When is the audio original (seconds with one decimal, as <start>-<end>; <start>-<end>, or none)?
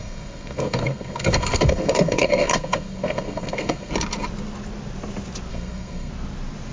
3.9-5.5; 6.1-6.7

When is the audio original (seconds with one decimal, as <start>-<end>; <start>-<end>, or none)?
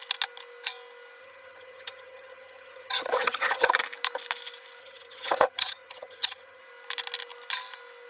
0.0-1.2; 3.7-4.8; 6.6-8.1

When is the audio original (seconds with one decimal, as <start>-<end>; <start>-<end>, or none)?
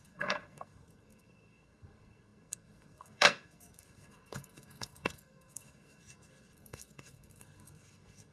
none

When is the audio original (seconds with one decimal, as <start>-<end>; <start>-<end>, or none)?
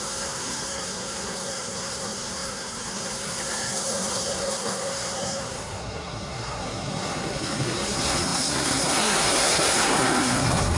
none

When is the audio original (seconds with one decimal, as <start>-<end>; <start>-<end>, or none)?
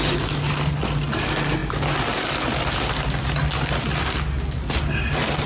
0.0-5.5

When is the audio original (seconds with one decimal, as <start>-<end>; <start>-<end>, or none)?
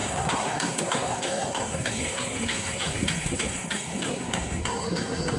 none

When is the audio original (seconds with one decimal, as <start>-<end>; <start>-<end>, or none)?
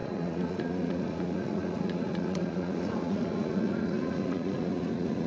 none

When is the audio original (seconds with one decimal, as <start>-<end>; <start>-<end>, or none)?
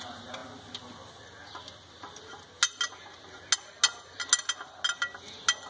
0.0-5.7